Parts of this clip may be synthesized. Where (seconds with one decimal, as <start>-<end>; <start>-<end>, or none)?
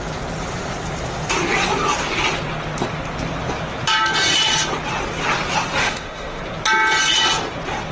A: 5.8-6.4